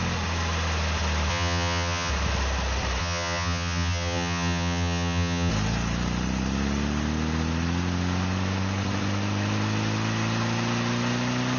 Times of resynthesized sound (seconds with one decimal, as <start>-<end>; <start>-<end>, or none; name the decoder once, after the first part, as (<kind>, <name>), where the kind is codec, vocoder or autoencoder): 1.3-2.1 (vocoder, HiFi-GAN); 3.0-5.5